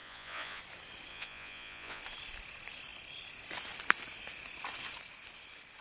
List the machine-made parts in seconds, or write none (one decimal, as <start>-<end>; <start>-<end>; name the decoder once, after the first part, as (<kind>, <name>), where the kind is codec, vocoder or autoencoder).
0.0-0.6 (vocoder, Vocos); 1.1-2.0

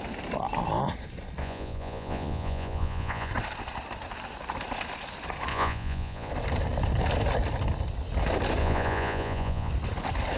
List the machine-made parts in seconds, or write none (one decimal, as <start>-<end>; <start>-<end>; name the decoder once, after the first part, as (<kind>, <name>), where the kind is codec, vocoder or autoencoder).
1.4-3.3 (vocoder, Vocos); 5.5-6.3; 8.6-9.7

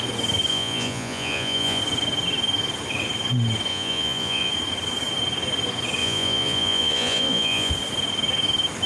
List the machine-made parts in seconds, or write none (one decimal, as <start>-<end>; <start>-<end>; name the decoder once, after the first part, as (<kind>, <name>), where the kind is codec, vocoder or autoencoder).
0.5-1.8 (vocoder, Vocos); 3.7-4.5; 6.0-7.7

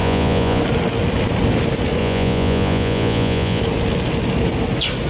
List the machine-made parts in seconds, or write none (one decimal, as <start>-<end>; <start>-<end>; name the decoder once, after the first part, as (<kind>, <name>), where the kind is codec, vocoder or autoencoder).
0.0-0.6 (vocoder, Vocos); 2.0-3.6

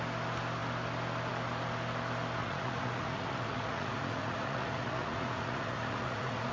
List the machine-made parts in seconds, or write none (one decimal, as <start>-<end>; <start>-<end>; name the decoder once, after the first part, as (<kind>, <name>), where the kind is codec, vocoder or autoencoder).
2.4-6.5 (vocoder, Vocos)